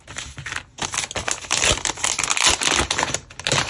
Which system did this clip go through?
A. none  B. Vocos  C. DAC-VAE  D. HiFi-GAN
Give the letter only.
A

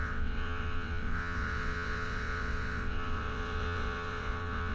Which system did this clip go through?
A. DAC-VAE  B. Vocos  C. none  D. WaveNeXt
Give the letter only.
D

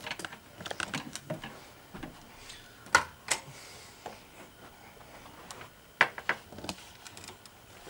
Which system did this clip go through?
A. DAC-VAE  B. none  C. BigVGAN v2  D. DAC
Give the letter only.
B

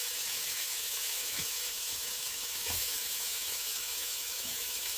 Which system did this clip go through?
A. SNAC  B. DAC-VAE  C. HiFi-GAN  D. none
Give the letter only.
B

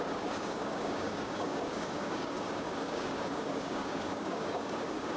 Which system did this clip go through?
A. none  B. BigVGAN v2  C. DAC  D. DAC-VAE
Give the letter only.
C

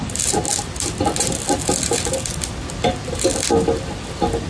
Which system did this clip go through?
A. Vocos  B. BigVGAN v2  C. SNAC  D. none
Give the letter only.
D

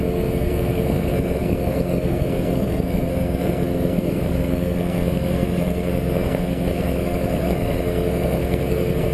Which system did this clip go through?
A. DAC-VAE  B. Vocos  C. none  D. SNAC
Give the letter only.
D